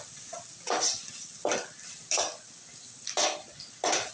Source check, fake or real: real